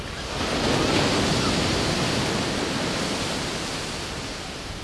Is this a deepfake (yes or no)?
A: no